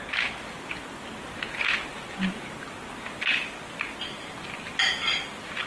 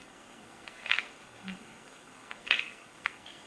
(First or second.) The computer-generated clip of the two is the second